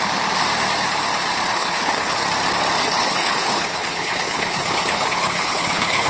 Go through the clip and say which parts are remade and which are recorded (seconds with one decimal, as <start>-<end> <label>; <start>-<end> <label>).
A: 0.0-1.5 recorded; 1.5-2.2 remade; 2.2-2.8 recorded; 2.8-6.1 remade